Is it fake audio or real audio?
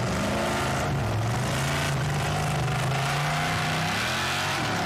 real